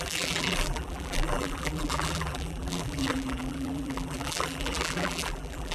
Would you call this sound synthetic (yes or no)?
yes